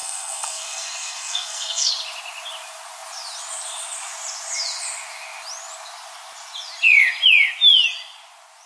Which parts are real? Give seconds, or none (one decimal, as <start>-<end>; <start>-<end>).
1.9-8.7